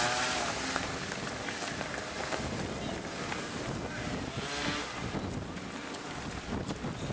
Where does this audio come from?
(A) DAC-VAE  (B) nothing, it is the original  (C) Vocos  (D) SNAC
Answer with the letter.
B